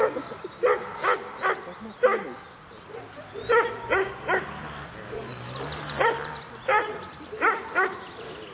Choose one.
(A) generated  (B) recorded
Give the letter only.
B